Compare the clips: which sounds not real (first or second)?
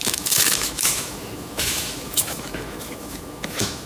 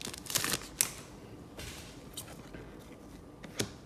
first